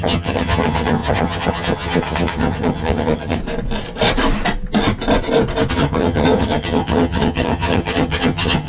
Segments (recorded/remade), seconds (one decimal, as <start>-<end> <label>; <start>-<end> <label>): 0.0-3.4 remade; 3.4-5.7 recorded; 5.7-8.7 remade